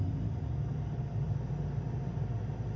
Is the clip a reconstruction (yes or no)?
no